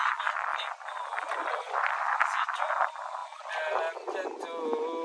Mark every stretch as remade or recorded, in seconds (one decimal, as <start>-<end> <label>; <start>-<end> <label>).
0.0-5.0 recorded